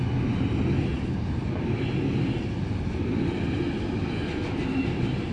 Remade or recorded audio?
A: recorded